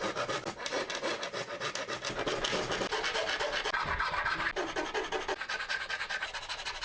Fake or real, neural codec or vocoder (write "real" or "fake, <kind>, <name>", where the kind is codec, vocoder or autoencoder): real